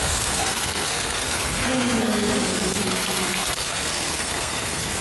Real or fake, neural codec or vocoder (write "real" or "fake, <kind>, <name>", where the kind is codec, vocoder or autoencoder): fake, codec, SNAC